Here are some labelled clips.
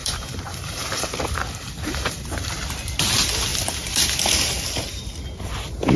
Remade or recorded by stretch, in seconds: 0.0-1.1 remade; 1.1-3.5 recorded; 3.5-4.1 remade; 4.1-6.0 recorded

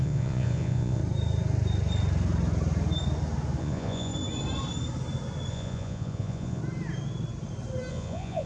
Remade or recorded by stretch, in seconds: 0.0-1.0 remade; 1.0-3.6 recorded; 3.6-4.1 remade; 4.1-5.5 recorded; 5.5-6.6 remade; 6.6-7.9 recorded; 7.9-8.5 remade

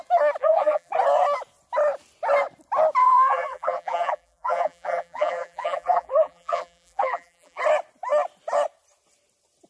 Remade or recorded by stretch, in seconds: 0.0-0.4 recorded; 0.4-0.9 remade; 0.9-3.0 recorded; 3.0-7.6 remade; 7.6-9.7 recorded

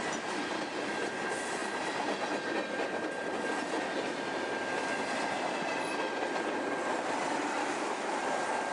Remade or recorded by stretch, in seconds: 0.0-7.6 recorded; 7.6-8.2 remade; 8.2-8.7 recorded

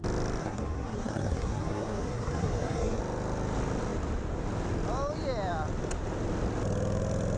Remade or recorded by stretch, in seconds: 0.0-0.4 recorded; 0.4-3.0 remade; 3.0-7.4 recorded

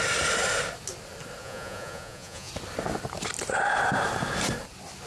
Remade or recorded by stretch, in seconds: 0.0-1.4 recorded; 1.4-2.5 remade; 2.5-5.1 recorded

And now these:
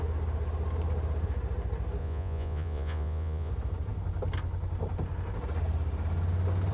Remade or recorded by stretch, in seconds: 0.0-2.0 recorded; 2.0-3.5 remade; 3.5-6.7 recorded

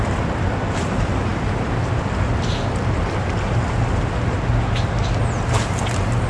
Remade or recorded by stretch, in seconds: 0.0-6.3 recorded